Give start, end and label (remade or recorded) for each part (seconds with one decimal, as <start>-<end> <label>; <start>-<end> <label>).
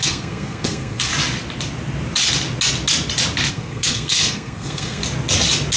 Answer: 0.0-1.1 remade; 1.1-3.5 recorded; 3.5-5.0 remade; 5.0-5.8 recorded